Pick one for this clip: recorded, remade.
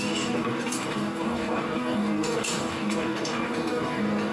remade